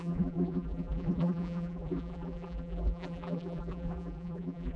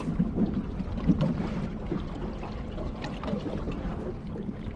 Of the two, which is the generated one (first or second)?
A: first